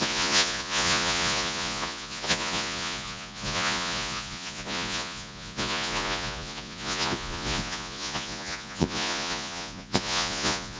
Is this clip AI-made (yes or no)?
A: yes